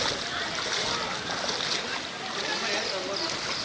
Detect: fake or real real